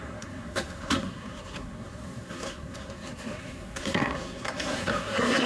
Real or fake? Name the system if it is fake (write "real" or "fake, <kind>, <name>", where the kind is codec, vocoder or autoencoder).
fake, codec, SNAC